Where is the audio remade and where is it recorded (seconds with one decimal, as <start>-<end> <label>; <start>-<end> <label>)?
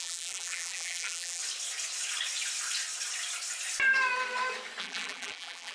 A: 0.0-1.4 remade; 1.4-4.8 recorded; 4.8-5.7 remade